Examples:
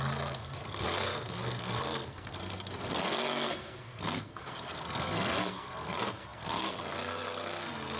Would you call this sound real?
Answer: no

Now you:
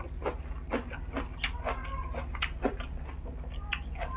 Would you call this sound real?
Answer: yes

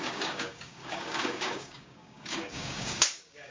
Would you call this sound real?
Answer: no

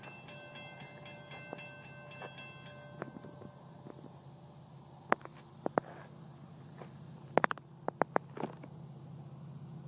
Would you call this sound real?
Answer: yes